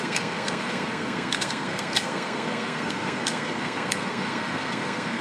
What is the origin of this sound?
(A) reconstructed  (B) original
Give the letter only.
A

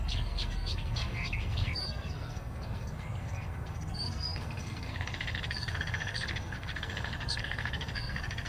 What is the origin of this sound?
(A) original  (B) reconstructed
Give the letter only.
B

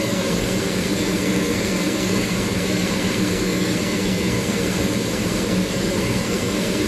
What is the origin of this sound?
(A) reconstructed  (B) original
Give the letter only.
A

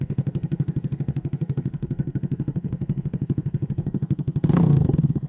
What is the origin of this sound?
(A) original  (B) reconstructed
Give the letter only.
B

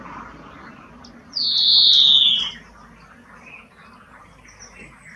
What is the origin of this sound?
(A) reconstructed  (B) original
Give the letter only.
B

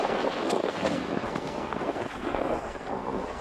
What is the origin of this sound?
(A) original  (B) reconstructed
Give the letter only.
B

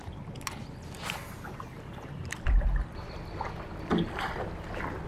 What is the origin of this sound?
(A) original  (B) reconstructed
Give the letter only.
A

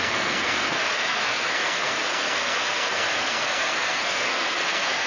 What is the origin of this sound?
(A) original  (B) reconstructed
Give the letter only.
B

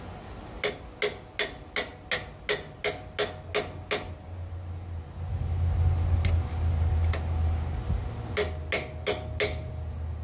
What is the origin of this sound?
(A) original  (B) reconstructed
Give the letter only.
A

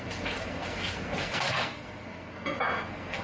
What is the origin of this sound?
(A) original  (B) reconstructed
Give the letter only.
B